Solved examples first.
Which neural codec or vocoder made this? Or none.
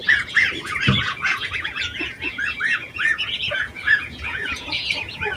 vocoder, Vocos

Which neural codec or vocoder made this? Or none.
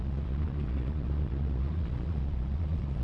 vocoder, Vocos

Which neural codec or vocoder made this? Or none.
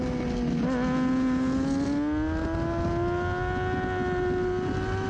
none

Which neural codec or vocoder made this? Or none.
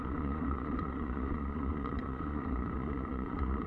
vocoder, Vocos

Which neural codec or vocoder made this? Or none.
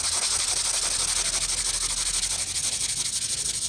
none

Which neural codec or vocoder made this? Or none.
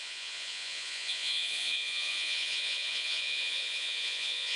vocoder, Vocos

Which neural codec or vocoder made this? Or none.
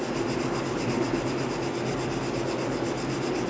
none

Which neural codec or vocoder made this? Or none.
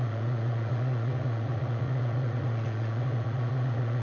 vocoder, Vocos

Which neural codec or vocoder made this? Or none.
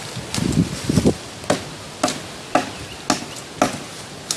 none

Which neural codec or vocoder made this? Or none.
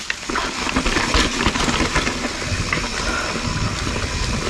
none